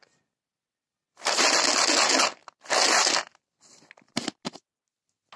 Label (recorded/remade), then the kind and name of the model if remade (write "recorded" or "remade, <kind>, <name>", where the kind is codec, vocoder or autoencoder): recorded